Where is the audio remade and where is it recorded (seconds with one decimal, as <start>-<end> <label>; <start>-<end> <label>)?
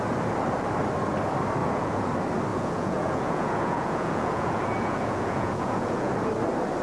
0.0-1.6 recorded; 1.6-2.1 remade; 2.1-2.5 recorded; 2.5-6.1 remade; 6.1-6.8 recorded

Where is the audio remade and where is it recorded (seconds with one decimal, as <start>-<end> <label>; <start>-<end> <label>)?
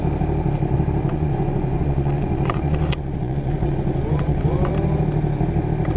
0.0-1.1 recorded; 1.1-4.7 remade; 4.7-6.0 recorded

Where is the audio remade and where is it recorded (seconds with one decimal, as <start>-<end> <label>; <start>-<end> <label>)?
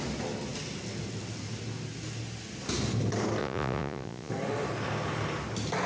0.0-3.4 recorded; 3.4-4.3 remade; 4.3-5.9 recorded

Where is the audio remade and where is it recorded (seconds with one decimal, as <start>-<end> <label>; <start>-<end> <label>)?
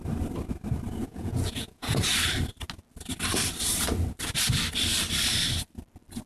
0.0-1.0 recorded; 1.0-2.0 remade; 2.0-6.3 recorded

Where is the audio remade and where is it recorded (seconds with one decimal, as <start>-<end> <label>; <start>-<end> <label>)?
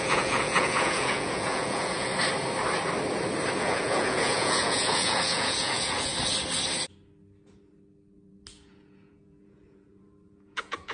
0.0-2.1 remade; 2.1-3.6 recorded; 3.6-6.1 remade; 6.1-8.5 recorded; 8.5-10.9 remade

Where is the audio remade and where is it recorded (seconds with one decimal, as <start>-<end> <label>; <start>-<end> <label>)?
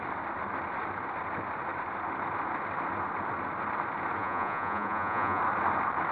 0.0-4.2 recorded; 4.2-5.4 remade; 5.4-6.1 recorded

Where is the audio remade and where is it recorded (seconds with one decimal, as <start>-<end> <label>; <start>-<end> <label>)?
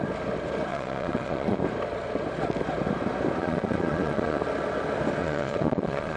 0.0-0.7 recorded; 0.7-1.6 remade; 1.6-3.4 recorded; 3.4-4.4 remade; 4.4-5.2 recorded; 5.2-6.2 remade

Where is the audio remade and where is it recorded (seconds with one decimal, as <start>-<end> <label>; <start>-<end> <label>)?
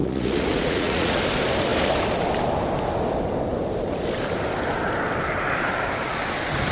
0.0-1.2 remade; 1.2-6.7 recorded